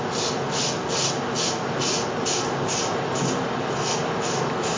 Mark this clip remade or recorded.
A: recorded